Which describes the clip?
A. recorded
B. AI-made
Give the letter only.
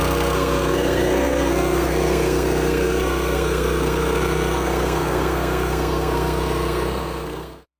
B